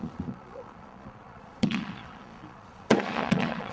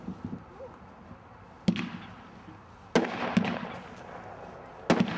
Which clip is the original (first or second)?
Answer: second